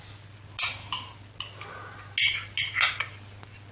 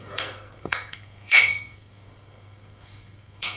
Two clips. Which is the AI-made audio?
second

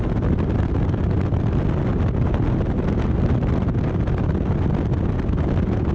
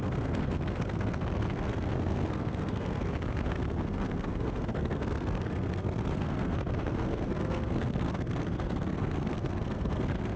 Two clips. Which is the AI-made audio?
second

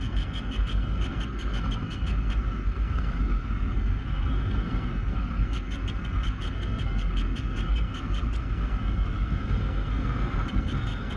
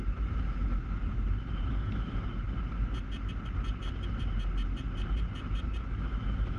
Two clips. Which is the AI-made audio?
first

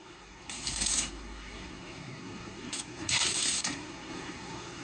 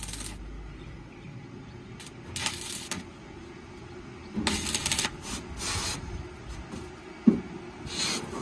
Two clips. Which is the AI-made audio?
first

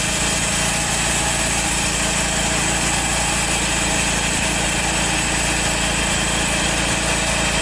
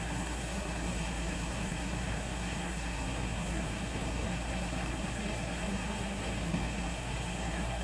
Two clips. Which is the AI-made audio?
second